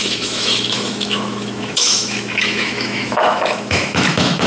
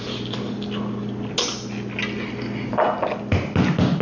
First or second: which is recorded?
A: second